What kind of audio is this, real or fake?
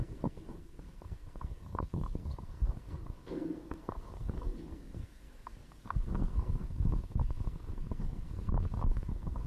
fake